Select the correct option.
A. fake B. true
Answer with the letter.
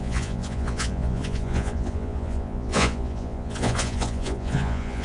A